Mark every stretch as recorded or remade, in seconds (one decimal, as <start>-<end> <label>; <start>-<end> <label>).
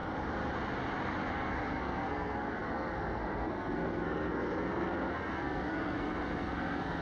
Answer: 0.0-1.3 recorded; 1.3-7.0 remade